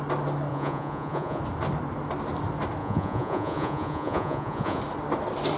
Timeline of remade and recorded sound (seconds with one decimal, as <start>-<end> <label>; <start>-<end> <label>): 0.0-0.5 recorded; 0.5-1.4 remade; 1.4-2.8 recorded; 2.8-4.8 remade; 4.8-5.6 recorded